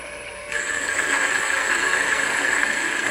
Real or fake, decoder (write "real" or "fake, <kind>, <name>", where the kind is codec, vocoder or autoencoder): fake, codec, SNAC